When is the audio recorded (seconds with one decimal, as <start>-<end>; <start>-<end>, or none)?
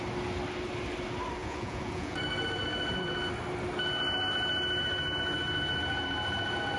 0.0-1.4; 2.2-6.8